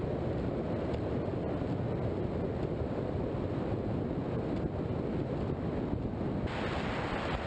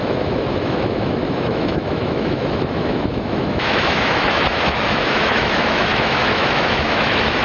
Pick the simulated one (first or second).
second